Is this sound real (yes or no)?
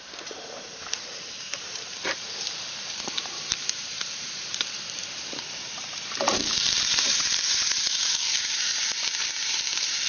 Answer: no